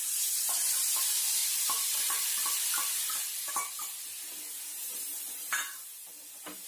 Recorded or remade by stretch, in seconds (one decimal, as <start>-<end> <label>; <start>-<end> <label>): 0.0-0.5 remade; 0.5-1.4 recorded; 1.4-3.5 remade; 3.5-4.8 recorded; 4.8-5.9 remade; 5.9-6.7 recorded